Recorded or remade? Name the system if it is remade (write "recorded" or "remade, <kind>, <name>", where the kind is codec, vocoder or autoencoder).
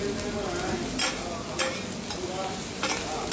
recorded